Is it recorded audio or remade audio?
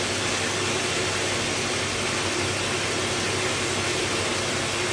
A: recorded